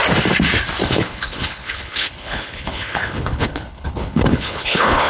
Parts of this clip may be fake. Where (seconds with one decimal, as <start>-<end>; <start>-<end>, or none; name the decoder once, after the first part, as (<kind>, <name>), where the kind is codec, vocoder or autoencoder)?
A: 0.9-5.1 (codec, HILCodec)